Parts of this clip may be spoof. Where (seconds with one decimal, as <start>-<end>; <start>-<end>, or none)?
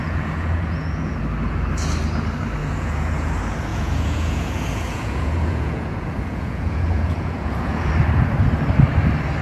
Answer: 0.0-1.2; 2.6-3.3; 3.7-7.9